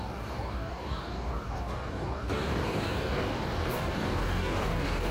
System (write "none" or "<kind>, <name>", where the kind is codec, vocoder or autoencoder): codec, DAC